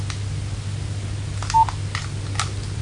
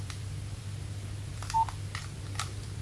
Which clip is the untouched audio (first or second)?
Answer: first